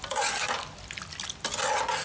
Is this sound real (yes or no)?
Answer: yes